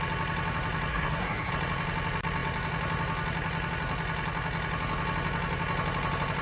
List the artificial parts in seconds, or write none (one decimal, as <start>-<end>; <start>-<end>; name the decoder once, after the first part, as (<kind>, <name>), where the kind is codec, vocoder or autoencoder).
0.9-1.5 (codec, SNAC)